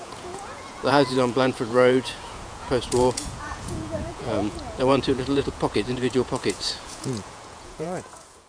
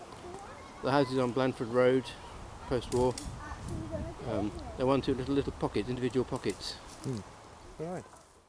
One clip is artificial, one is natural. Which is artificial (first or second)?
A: first